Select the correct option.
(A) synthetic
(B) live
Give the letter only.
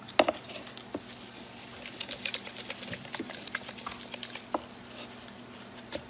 B